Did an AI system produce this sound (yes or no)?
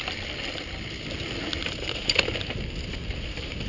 no